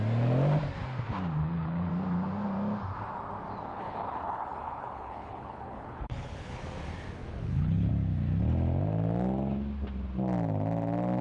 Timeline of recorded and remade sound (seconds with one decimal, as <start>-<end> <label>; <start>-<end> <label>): 0.0-1.4 recorded; 1.4-1.9 remade; 1.9-3.7 recorded; 3.7-6.6 remade; 6.6-7.2 recorded; 7.2-7.9 remade; 7.9-11.2 recorded